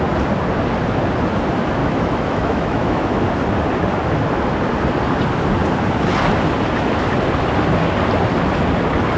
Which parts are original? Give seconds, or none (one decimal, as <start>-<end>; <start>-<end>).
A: 0.0-1.8; 3.2-9.2